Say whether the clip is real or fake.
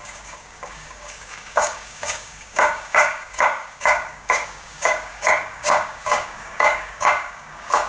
fake